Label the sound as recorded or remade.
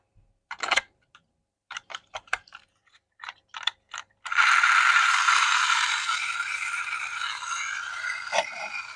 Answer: remade